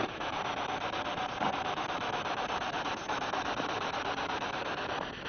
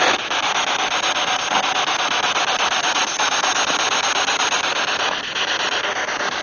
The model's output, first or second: first